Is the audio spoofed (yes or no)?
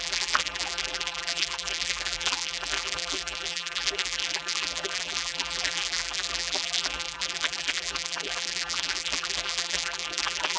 yes